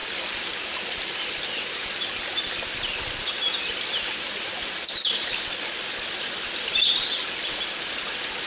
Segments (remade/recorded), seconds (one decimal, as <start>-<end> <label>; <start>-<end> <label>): 0.0-8.5 recorded